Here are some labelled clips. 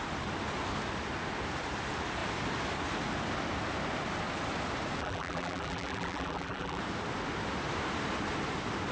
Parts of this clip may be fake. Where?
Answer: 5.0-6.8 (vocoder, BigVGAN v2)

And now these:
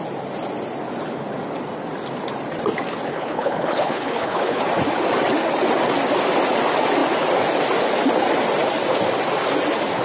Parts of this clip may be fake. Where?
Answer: 3.1-4.6 (codec, HILCodec)

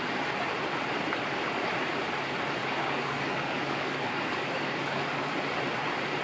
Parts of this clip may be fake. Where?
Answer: 2.6-5.3 (codec, DAC)

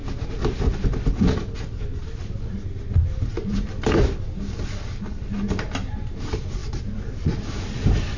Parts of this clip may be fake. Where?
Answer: none